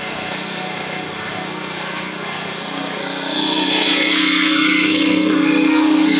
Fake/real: fake